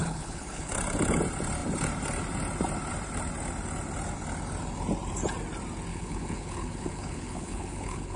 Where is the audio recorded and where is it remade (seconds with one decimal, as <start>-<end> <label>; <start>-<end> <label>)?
0.0-0.7 remade; 0.7-5.9 recorded; 5.9-8.2 remade